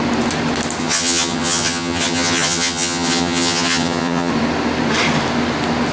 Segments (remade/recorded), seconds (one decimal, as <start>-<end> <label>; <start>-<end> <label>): 0.0-0.8 recorded; 0.8-4.3 remade; 4.3-5.9 recorded